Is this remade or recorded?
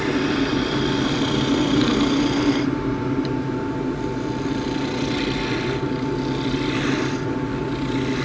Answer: recorded